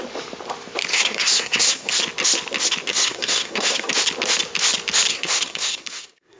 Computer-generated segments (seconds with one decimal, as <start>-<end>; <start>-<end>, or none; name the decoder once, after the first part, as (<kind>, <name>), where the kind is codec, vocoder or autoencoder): 0.9-1.9 (codec, SNAC); 2.9-3.9; 5.1-6.4